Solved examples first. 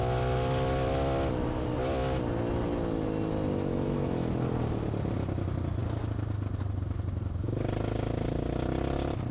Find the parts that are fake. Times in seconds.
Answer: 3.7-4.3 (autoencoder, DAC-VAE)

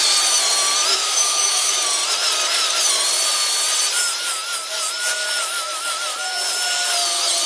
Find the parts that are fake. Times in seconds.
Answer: 0.9-1.7 (autoencoder, DAC-VAE)

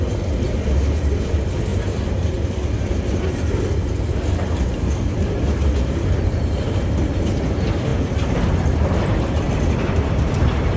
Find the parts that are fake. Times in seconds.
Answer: 1.7-3.5 (vocoder, BigVGAN v2)

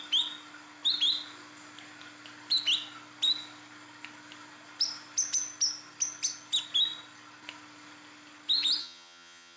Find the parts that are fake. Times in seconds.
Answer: 8.8-9.6 (vocoder, HiFi-GAN)

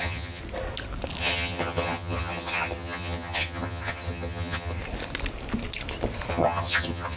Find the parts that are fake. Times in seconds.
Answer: 0.0-0.4 (vocoder, HiFi-GAN); 1.2-4.8; 6.3-7.2